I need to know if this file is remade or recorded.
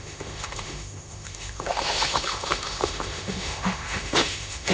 remade